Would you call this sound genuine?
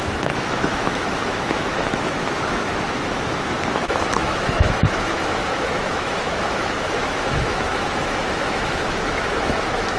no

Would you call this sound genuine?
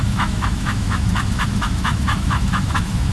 no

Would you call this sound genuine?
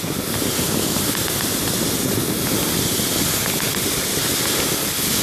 yes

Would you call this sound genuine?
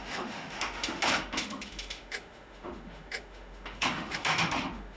no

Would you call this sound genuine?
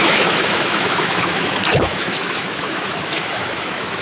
no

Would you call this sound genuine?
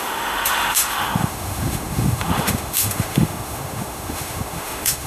no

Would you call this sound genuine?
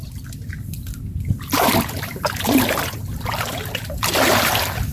yes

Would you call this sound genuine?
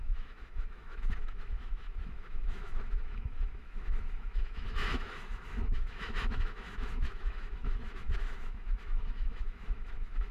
no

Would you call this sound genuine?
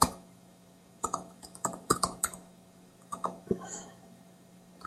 no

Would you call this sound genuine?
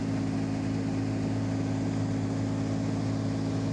yes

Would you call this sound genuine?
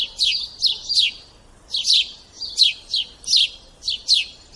yes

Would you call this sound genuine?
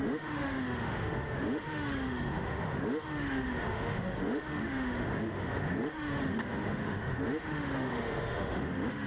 no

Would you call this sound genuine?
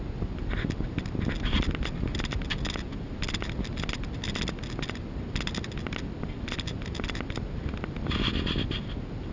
yes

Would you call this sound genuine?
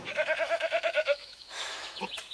no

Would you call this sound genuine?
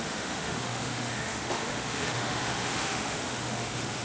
no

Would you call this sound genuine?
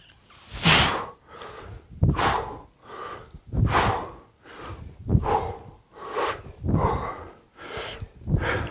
yes